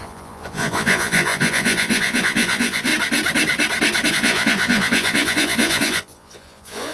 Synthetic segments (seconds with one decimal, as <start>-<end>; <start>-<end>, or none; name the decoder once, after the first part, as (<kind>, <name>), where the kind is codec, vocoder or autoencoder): 0.0-2.9 (vocoder, Vocos); 4.1-6.9